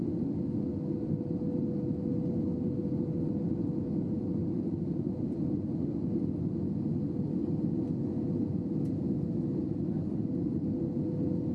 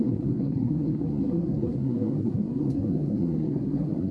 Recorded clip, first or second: first